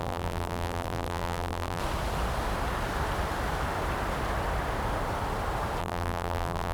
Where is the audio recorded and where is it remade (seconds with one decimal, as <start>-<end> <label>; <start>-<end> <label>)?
0.0-1.8 remade; 1.8-5.8 recorded; 5.8-6.7 remade